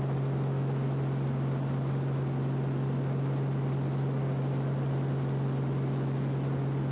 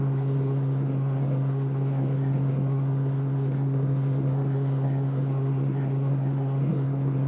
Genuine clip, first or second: first